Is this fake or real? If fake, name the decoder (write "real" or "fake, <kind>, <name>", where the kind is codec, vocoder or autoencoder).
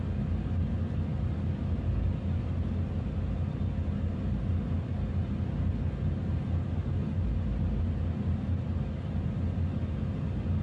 real